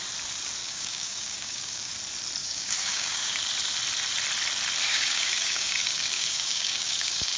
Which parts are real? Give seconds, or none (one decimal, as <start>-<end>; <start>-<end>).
0.0-0.6; 1.9-2.4; 3.4-4.9

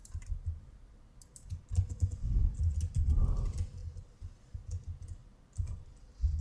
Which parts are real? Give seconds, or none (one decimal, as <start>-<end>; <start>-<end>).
1.6-5.2; 5.9-6.4

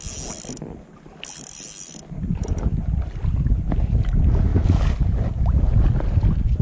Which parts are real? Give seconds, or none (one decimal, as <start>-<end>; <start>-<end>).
0.0-6.6

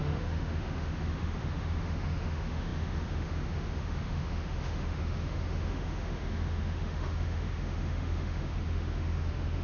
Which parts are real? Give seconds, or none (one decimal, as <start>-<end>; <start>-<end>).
none

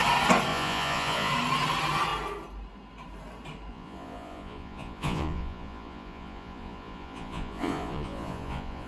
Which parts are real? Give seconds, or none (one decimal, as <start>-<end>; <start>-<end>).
0.0-0.5; 1.3-3.7

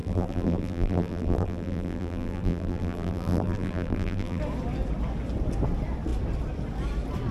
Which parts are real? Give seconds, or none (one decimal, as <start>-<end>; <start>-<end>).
4.4-7.3

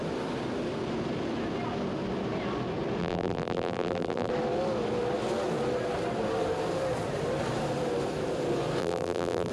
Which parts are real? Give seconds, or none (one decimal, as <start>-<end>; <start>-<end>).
0.0-3.0; 4.3-8.8

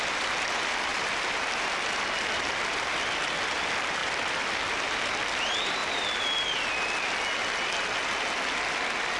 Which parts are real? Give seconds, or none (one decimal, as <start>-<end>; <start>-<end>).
0.0-0.9; 1.5-5.8; 6.7-9.2